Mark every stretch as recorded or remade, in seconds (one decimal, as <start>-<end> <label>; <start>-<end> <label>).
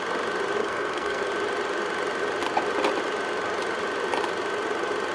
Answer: 0.0-0.6 recorded; 0.6-1.3 remade; 1.3-5.1 recorded